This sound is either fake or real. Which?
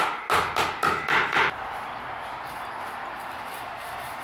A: real